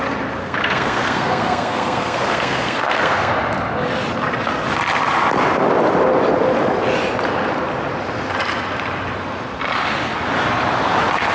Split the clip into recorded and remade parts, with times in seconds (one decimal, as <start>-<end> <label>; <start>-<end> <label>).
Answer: 0.0-0.4 recorded; 0.4-3.3 remade; 3.3-11.3 recorded